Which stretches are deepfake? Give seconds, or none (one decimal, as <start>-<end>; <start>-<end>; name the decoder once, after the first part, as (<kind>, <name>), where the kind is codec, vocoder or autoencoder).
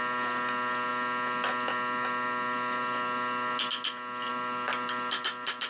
none